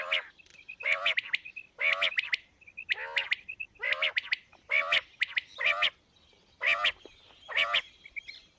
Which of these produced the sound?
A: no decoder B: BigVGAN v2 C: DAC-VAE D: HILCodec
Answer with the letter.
A